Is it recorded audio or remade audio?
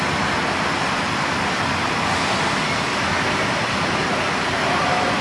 recorded